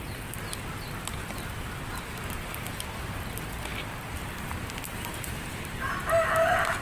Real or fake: real